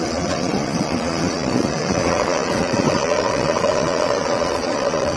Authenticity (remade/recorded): remade